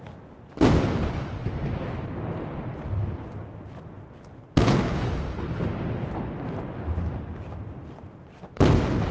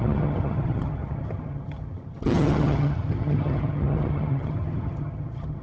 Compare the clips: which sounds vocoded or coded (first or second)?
second